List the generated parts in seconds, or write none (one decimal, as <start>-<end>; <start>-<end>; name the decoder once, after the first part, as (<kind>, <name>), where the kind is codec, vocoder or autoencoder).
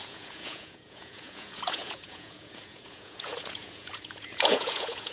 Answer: 0.0-5.1 (vocoder, Vocos)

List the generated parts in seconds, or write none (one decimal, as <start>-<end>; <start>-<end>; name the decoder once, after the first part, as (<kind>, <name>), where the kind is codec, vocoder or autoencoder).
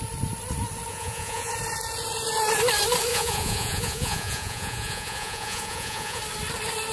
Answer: 0.9-1.5 (vocoder, Vocos); 3.1-6.2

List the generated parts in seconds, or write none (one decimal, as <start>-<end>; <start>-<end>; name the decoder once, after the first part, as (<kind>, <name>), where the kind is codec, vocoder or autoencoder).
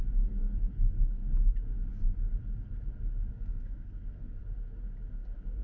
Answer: 0.0-1.2 (codec, SNAC); 3.3-4.4; 5.1-5.6